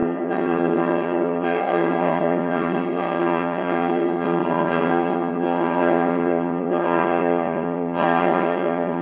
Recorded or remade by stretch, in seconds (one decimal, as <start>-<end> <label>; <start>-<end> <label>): 0.0-9.0 remade